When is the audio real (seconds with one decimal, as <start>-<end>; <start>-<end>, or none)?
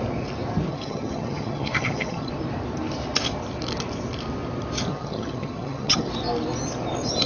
0.0-0.7; 2.3-4.9; 6.1-7.3